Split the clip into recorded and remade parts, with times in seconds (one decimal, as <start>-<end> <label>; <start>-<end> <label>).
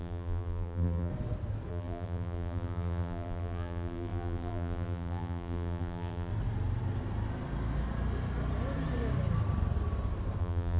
0.0-1.1 remade; 1.1-1.7 recorded; 1.7-6.3 remade; 6.3-10.4 recorded; 10.4-10.8 remade